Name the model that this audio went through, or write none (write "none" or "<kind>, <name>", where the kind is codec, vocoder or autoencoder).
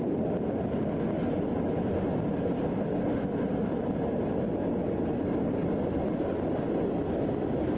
none